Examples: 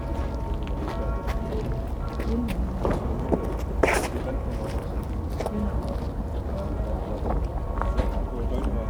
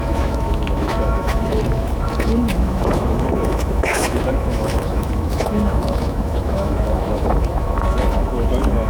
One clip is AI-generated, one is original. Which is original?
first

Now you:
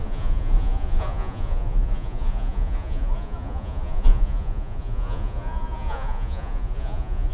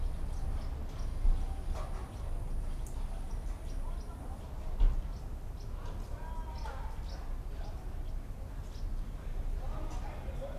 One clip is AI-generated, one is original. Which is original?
second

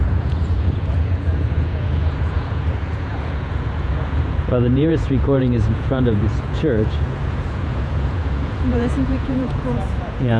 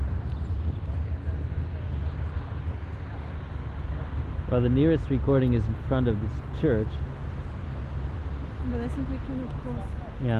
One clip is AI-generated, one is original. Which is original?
second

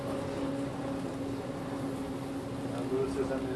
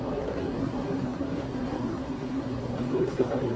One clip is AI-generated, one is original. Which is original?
first